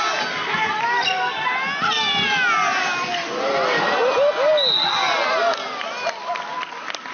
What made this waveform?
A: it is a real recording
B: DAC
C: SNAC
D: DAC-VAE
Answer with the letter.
A